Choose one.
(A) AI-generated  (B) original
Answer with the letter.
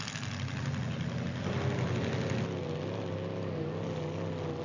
B